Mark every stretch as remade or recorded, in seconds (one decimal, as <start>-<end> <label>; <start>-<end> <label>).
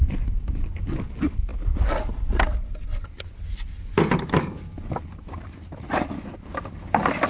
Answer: 0.0-7.3 recorded